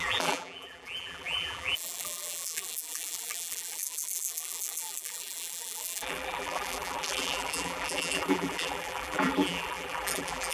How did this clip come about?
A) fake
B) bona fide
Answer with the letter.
A